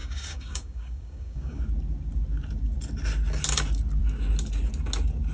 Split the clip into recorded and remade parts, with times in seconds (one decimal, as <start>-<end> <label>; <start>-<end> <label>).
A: 0.0-1.6 remade; 1.6-5.3 recorded